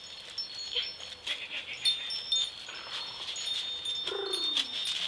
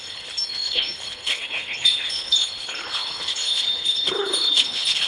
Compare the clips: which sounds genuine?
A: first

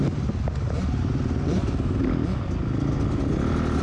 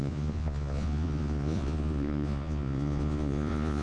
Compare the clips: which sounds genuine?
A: first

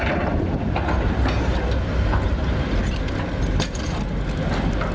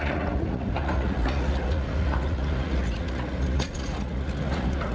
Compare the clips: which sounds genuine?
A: first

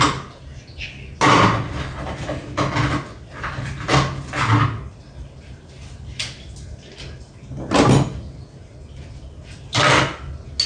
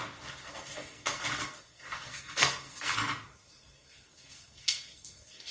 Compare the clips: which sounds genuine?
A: first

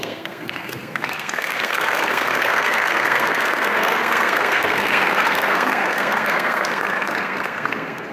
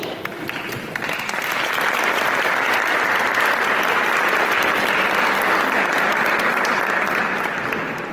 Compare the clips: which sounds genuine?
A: second